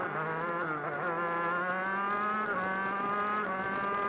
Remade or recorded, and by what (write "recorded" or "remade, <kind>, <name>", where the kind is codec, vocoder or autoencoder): recorded